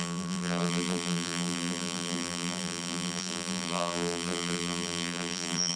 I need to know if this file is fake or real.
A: fake